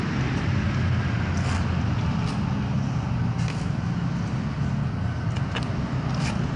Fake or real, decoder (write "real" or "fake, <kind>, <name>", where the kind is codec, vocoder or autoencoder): real